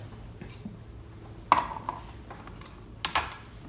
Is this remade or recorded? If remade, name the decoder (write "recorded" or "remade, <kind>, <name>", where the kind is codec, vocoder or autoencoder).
recorded